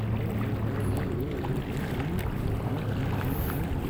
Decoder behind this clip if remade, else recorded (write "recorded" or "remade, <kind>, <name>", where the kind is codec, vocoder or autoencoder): recorded